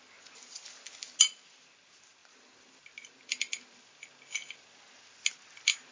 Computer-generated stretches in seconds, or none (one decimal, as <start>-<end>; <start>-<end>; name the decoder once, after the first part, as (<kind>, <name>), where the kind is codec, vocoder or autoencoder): none